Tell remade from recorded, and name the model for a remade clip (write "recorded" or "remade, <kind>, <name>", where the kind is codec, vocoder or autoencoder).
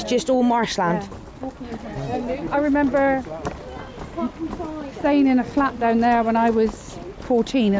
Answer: recorded